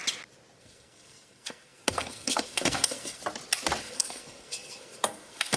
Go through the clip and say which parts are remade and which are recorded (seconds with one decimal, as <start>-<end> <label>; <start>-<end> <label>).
0.0-0.6 recorded; 0.6-3.2 remade; 3.2-3.8 recorded; 3.8-5.6 remade